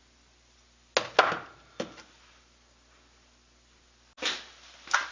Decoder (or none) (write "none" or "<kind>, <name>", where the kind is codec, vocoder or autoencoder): none